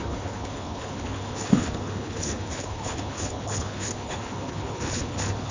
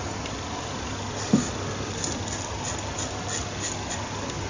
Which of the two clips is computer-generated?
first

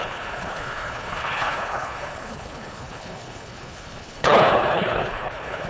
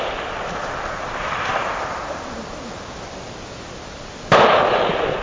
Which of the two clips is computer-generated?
first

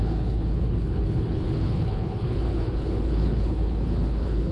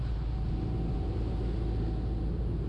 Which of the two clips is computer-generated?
first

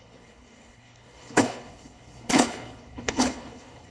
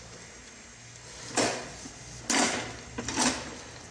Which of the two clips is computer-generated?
first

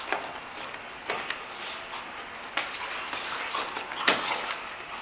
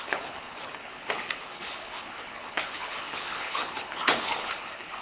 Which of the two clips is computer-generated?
second